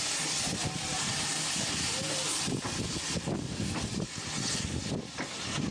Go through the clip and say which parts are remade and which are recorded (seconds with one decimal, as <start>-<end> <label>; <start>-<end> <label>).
0.0-5.7 recorded